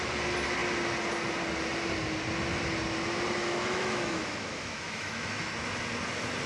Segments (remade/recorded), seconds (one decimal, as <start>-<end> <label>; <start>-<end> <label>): 0.0-3.4 recorded; 3.4-5.5 remade; 5.5-6.5 recorded